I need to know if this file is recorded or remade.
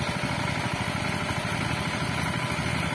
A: recorded